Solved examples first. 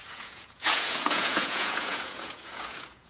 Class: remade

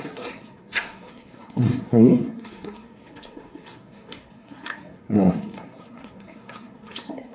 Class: remade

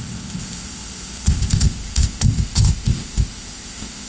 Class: remade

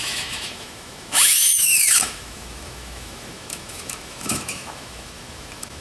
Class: remade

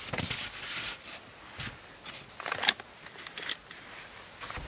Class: recorded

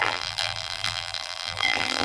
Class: remade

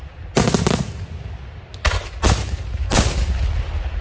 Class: recorded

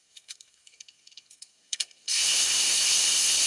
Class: remade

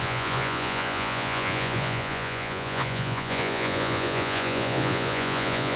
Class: remade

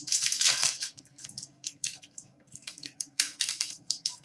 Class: remade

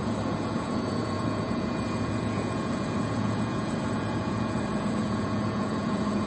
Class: remade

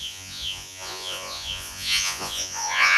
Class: remade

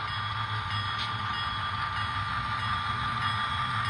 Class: recorded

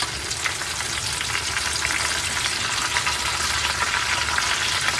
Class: recorded